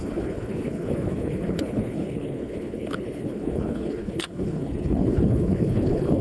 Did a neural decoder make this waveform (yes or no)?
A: yes